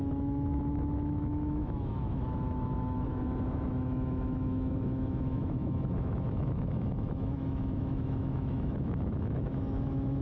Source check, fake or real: fake